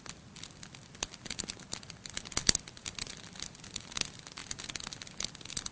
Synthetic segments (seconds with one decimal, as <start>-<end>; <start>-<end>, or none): none